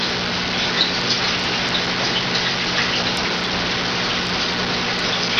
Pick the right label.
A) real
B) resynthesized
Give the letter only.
A